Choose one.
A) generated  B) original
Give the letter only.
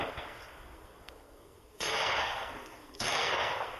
A